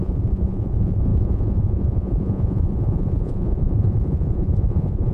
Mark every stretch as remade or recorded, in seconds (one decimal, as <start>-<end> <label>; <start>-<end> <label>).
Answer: 0.0-5.1 remade